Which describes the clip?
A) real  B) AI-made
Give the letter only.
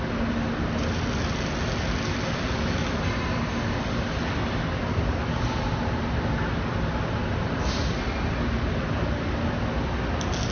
A